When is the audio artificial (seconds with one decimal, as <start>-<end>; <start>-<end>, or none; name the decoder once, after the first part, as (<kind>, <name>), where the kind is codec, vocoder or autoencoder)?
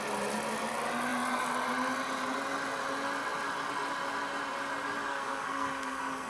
5.1-6.3 (codec, SNAC)